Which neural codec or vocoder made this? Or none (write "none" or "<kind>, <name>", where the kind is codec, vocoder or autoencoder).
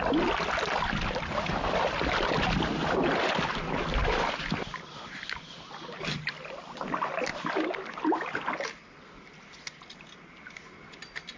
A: none